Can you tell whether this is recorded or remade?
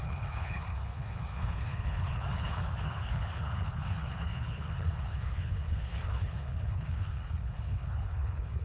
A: remade